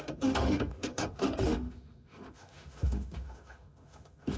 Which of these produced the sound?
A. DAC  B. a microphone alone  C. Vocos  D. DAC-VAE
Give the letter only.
D